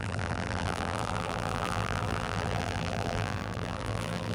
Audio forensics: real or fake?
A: fake